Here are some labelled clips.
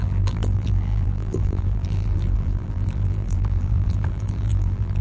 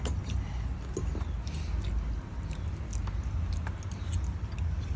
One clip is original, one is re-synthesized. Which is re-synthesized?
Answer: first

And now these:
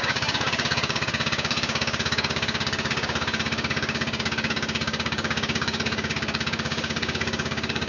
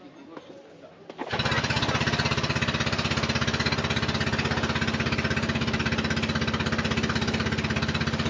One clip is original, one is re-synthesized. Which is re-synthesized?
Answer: first